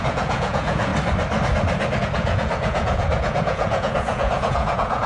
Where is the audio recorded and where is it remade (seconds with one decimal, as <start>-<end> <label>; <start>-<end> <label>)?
0.0-0.9 remade; 0.9-2.0 recorded; 2.0-5.1 remade